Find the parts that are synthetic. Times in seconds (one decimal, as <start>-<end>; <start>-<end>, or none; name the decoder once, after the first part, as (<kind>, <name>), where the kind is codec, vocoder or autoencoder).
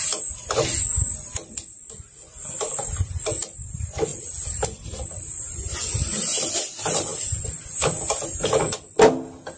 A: none